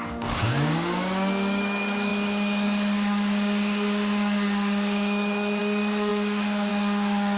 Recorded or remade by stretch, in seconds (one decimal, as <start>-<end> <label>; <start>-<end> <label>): 0.0-7.4 remade